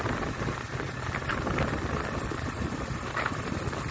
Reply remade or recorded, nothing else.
recorded